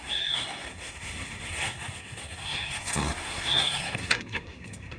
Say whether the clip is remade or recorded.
remade